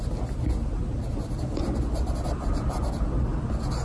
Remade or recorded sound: recorded